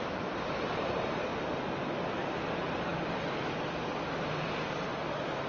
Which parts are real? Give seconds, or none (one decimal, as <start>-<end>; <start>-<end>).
1.3-2.5; 2.9-4.2; 4.9-5.5

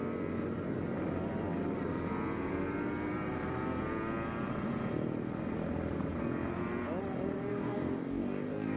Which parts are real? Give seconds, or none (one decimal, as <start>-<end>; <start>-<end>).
0.0-7.5

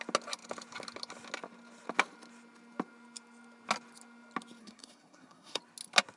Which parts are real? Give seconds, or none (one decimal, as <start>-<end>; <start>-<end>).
0.0-4.6; 5.6-6.2

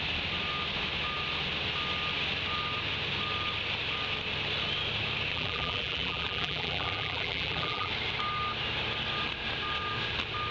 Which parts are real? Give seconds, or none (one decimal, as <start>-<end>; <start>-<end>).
0.0-5.3; 7.9-10.5